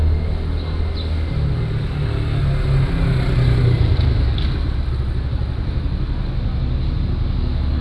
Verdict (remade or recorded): recorded